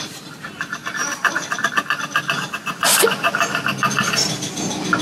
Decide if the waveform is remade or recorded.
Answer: recorded